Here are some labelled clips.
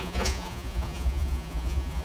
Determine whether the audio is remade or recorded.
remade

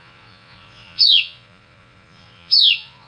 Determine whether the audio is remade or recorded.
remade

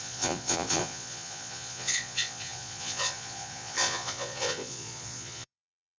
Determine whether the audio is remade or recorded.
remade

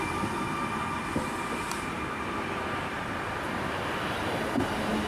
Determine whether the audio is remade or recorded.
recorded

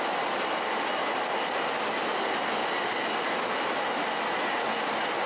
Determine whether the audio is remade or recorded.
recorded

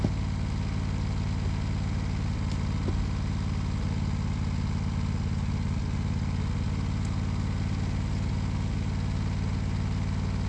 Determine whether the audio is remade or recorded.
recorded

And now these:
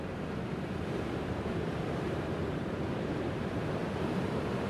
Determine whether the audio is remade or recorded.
remade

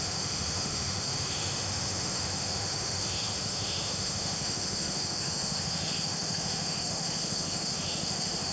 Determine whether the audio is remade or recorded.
remade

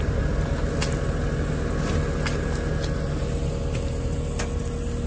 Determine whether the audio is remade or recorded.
recorded